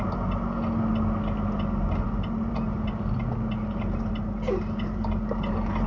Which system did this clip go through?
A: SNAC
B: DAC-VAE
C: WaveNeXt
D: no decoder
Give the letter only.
D